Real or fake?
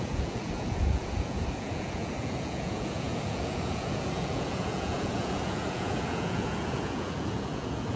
fake